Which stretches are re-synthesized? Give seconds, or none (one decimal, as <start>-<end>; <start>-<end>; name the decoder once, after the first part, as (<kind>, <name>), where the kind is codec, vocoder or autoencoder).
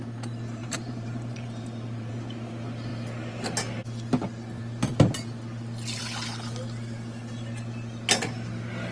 0.6-2.1 (vocoder, BigVGAN v2)